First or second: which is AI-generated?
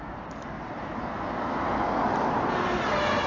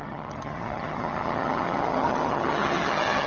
second